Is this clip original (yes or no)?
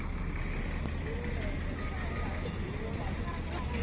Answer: yes